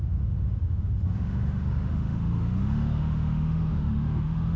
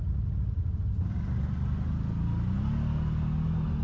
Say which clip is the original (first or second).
second